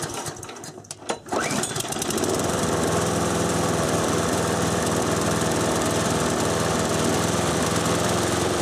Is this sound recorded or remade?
remade